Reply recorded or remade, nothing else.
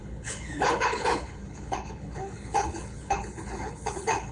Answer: remade